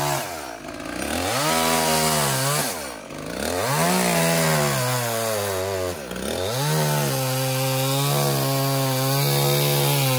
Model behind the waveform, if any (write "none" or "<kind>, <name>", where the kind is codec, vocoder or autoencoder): none